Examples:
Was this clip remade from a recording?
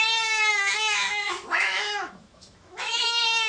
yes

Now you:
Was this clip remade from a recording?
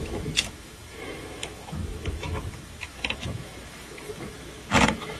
yes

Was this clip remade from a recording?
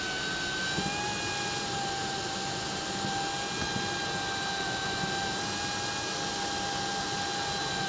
no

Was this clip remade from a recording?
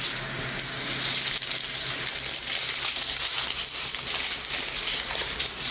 no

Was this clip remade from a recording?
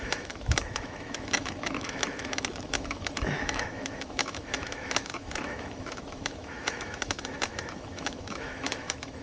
yes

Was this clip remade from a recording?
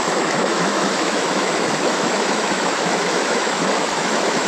yes